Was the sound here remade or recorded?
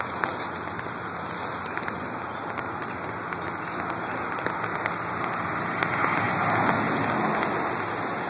recorded